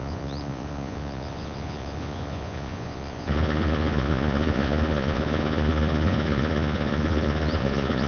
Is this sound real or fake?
fake